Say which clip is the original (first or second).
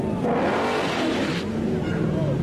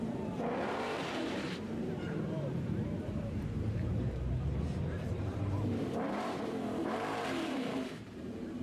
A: first